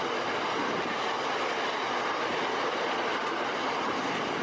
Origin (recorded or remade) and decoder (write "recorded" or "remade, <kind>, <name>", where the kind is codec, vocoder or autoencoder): recorded